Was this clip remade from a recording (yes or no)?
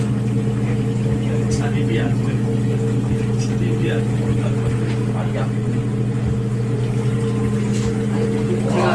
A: no